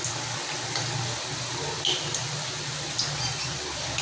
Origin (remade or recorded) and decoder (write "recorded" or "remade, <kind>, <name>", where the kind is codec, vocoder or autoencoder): recorded